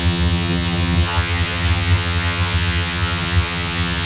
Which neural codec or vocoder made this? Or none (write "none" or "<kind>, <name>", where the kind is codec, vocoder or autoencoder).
vocoder, HiFi-GAN